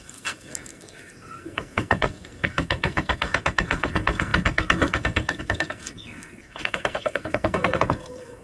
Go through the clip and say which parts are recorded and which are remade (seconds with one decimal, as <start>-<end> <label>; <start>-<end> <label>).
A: 0.0-8.4 remade